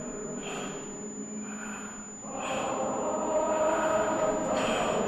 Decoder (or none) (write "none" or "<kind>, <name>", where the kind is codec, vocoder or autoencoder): none